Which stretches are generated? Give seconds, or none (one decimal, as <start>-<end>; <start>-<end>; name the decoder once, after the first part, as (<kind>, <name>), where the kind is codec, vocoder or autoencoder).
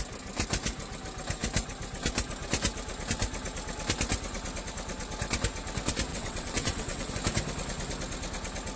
6.1-7.1 (vocoder, WaveNeXt)